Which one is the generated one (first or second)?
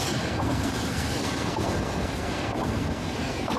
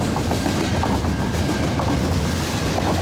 first